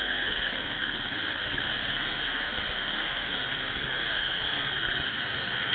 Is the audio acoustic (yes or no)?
no